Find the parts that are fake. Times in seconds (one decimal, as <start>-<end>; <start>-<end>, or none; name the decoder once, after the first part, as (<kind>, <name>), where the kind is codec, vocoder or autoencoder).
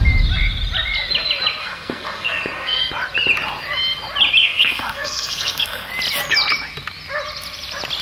1.6-2.9 (codec, SNAC); 4.4-5.9